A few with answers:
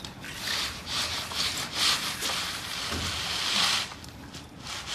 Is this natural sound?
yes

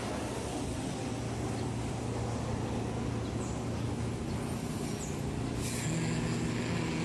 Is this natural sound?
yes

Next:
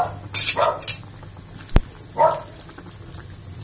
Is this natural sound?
yes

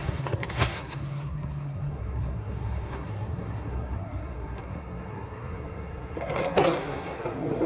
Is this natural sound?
no